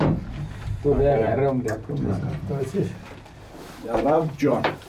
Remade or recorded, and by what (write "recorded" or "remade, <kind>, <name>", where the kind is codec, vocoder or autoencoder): remade, vocoder, BigVGAN v2